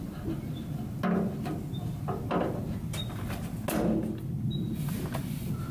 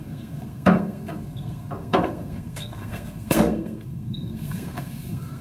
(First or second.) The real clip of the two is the first